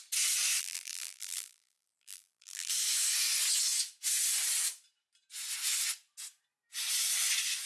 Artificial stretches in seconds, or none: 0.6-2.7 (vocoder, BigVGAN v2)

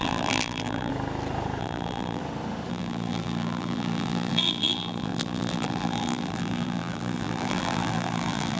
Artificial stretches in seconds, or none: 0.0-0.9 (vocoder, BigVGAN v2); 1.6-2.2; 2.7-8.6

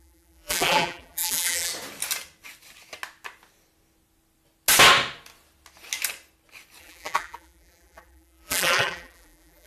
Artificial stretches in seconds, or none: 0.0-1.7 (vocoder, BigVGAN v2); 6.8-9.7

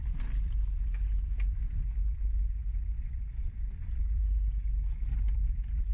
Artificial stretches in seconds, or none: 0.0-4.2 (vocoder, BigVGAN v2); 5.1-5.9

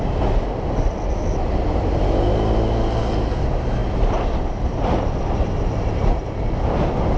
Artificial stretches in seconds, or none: 3.8-6.4 (vocoder, BigVGAN v2)